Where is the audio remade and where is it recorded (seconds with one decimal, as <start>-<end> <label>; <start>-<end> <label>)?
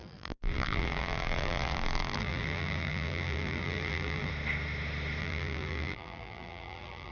0.0-4.3 remade; 4.3-5.2 recorded; 5.2-7.1 remade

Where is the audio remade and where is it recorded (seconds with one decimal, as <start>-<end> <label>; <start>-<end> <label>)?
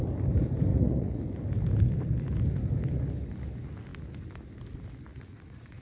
0.0-0.7 recorded; 0.7-1.2 remade; 1.2-5.1 recorded; 5.1-5.8 remade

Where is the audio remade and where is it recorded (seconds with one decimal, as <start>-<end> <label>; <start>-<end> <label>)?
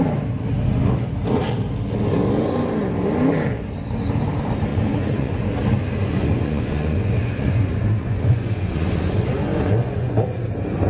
0.0-4.7 recorded; 4.7-5.4 remade; 5.4-6.0 recorded; 6.0-10.4 remade; 10.4-10.9 recorded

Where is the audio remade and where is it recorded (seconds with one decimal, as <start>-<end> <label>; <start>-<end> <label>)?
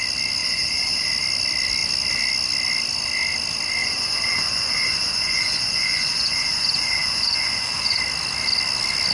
0.0-0.4 recorded; 0.4-1.1 remade; 1.1-3.8 recorded; 3.8-8.0 remade; 8.0-9.1 recorded